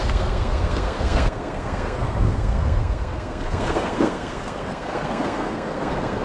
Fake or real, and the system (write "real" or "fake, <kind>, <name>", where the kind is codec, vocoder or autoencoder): fake, codec, SNAC